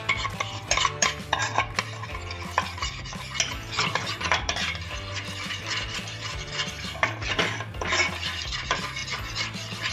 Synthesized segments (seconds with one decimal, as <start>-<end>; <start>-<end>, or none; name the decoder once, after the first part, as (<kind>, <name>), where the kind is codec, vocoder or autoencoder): 0.0-1.4 (vocoder, BigVGAN v2); 3.8-9.0